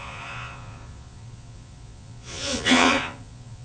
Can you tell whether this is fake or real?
fake